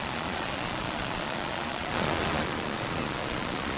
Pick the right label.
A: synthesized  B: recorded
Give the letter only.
A